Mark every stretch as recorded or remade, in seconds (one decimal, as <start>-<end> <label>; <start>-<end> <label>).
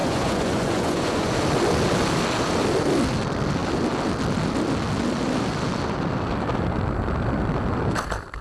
0.0-1.3 remade; 1.3-8.4 recorded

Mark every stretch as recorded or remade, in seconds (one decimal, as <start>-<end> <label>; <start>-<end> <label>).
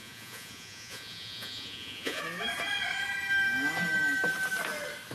0.0-2.2 remade; 2.2-5.1 recorded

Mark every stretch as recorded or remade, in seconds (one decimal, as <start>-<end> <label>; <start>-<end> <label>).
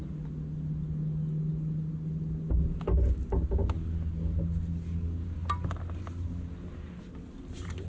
0.0-7.9 recorded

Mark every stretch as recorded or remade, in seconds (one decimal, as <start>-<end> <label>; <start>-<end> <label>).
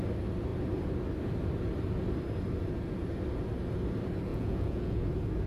0.0-4.3 recorded; 4.3-5.1 remade; 5.1-5.5 recorded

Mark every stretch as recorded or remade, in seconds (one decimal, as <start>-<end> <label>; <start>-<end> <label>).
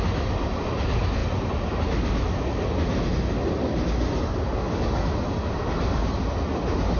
0.0-7.0 recorded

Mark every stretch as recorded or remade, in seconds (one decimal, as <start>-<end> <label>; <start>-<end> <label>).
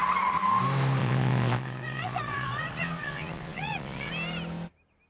0.0-1.0 recorded; 1.0-4.1 remade; 4.1-5.1 recorded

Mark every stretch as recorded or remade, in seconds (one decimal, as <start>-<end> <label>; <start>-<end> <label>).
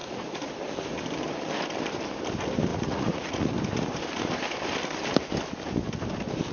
0.0-0.5 remade; 0.5-2.7 recorded; 2.7-3.5 remade; 3.5-6.5 recorded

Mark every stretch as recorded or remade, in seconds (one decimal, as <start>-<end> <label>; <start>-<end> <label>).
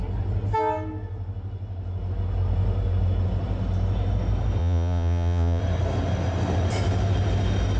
0.0-4.6 recorded; 4.6-5.6 remade; 5.6-7.8 recorded